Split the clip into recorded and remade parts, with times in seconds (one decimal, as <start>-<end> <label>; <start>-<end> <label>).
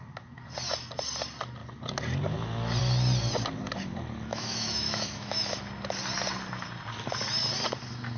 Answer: 0.0-4.3 recorded; 4.3-5.6 remade; 5.6-8.2 recorded